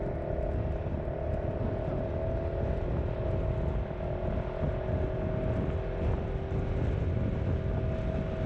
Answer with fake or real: real